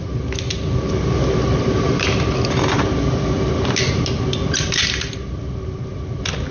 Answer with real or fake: real